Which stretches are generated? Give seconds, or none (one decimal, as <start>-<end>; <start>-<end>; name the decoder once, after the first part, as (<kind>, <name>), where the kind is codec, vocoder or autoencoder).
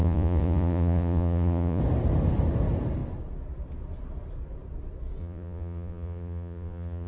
0.0-1.8 (vocoder, Vocos); 5.2-7.1